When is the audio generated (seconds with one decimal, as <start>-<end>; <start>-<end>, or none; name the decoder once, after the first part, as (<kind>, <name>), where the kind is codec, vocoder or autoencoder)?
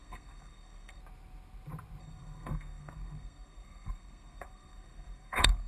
0.0-1.0 (codec, SNAC); 2.0-5.7